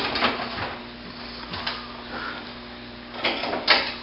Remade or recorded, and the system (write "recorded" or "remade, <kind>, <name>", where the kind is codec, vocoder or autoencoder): recorded